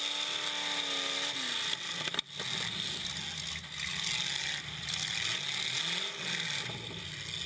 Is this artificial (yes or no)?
no